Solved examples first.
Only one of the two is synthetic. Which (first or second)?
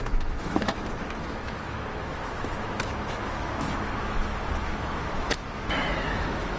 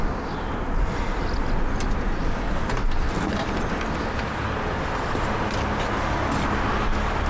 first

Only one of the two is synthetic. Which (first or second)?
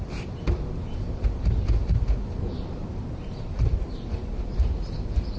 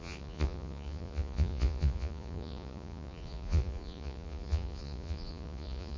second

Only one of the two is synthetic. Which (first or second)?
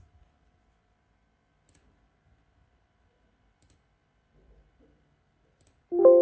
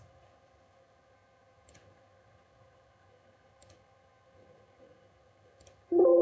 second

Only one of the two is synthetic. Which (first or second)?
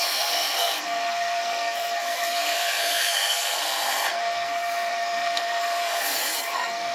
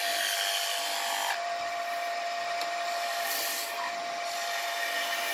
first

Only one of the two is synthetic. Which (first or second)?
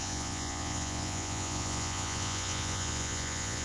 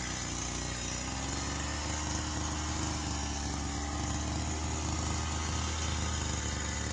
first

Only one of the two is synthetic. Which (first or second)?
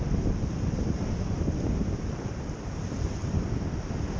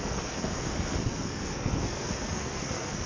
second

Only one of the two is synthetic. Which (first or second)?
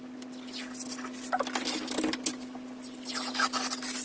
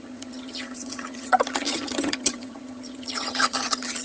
second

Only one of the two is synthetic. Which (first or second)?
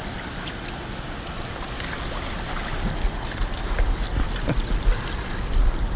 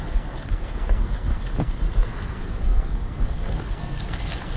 second